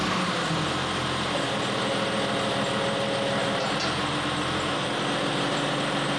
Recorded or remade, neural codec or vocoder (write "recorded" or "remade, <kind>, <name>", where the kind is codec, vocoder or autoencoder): recorded